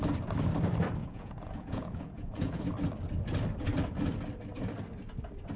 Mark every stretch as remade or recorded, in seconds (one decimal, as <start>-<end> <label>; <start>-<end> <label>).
0.0-1.0 recorded; 1.0-2.6 remade; 2.6-5.6 recorded